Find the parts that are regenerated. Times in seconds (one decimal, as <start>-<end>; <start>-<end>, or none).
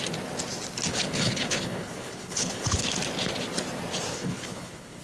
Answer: 0.9-2.9; 4.1-5.0